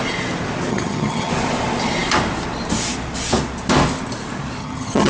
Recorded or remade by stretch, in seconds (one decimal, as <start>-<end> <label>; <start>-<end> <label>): 0.0-0.7 recorded; 0.7-1.3 remade; 1.3-4.6 recorded; 4.6-5.1 remade